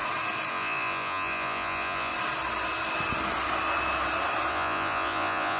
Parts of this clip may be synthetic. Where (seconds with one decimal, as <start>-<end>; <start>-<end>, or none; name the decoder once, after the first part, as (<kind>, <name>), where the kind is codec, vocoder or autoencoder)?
0.5-2.1 (vocoder, Vocos); 4.5-5.6